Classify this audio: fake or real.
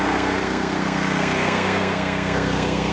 fake